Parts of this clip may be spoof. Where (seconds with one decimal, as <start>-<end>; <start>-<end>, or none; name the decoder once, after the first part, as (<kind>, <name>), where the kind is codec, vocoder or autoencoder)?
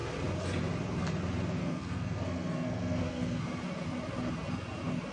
1.6-3.4 (codec, SNAC)